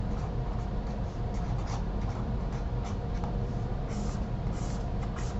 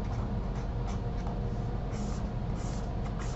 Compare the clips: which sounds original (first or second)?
second